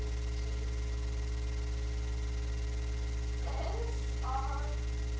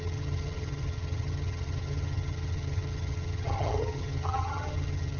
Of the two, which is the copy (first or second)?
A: second